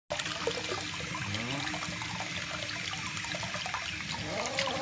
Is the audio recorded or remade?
recorded